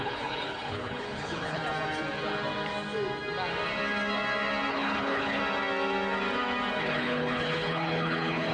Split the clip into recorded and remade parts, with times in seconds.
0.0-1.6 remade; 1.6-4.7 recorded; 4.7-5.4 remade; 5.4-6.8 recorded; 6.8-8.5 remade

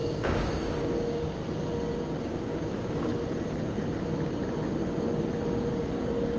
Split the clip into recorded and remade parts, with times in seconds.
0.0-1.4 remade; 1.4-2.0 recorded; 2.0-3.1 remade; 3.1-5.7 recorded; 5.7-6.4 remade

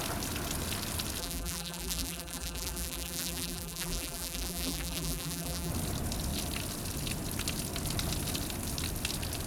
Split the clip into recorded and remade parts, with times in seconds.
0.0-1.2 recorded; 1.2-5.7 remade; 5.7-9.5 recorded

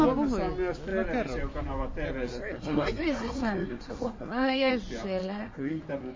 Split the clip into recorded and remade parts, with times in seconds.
0.0-2.3 recorded; 2.3-4.7 remade; 4.7-5.2 recorded; 5.2-5.8 remade; 5.8-6.2 recorded

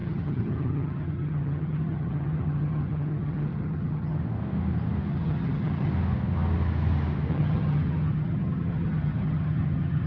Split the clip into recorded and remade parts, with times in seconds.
0.0-4.2 remade; 4.2-5.1 recorded; 5.1-5.9 remade; 5.9-7.3 recorded; 7.3-10.1 remade

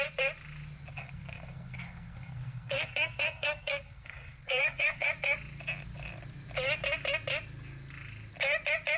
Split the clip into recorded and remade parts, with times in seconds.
0.0-0.9 recorded; 0.9-5.1 remade; 5.1-9.0 recorded

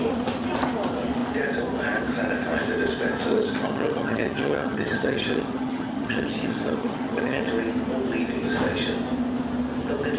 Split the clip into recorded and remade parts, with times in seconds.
0.0-3.3 recorded; 3.3-7.5 remade; 7.5-10.2 recorded

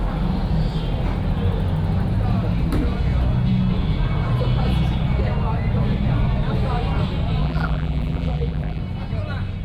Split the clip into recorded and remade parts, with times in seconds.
0.0-7.4 recorded; 7.4-8.8 remade; 8.8-9.6 recorded